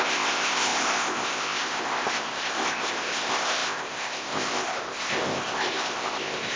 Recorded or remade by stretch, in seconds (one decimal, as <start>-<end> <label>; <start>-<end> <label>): 0.0-6.6 remade